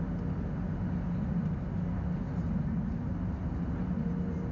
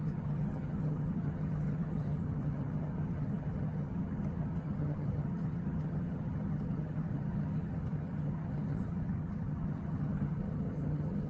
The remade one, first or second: second